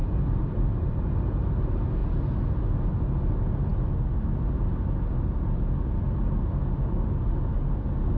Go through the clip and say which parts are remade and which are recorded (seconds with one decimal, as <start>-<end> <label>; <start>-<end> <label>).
0.0-1.1 remade; 1.1-8.2 recorded